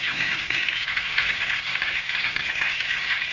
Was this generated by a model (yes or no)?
yes